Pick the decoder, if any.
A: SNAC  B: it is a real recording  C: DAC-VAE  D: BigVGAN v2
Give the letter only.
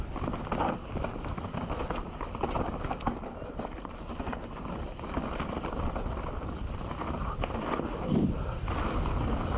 D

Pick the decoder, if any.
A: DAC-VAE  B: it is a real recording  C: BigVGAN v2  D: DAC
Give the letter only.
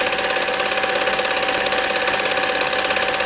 B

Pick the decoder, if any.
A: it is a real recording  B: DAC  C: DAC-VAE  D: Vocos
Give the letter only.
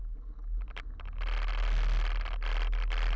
A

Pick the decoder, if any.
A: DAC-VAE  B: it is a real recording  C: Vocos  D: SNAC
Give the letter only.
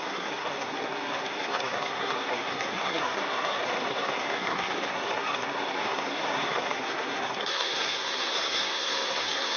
D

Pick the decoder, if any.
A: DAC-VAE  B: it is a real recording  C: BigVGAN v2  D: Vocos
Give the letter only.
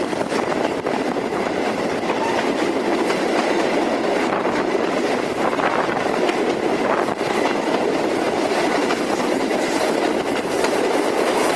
C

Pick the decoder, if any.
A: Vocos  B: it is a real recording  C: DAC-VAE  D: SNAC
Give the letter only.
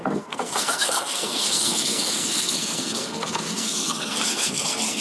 D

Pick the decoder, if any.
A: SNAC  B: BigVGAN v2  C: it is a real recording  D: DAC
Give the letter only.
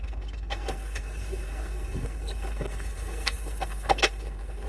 A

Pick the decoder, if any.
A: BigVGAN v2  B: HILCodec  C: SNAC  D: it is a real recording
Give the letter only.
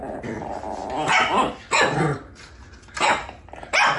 D